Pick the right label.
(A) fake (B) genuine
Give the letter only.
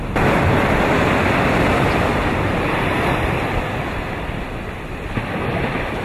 B